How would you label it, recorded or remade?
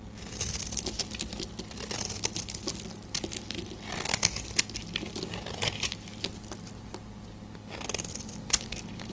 recorded